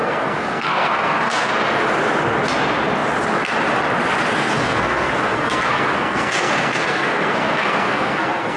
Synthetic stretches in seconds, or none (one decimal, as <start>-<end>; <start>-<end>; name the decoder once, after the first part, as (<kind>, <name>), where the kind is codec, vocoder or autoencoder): 0.0-1.5 (codec, SNAC); 4.6-8.6